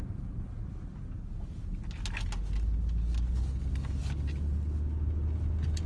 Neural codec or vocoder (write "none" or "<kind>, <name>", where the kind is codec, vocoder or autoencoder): none